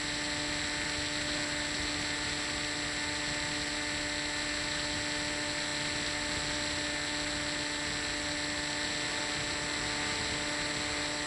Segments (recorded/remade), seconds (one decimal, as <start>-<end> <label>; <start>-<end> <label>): 0.0-11.3 recorded